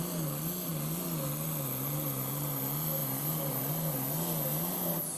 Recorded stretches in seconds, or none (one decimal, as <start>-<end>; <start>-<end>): 0.0-5.2